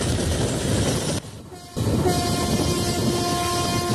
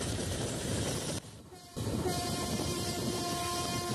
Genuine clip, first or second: first